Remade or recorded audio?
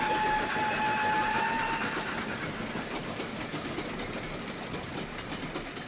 recorded